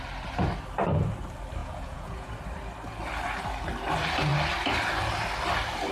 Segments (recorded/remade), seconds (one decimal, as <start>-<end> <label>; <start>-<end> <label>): 0.0-1.6 recorded; 1.6-2.3 remade; 2.3-5.9 recorded